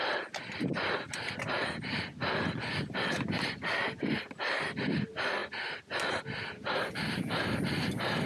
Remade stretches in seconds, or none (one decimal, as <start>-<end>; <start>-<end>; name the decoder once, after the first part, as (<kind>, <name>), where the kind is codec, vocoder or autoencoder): none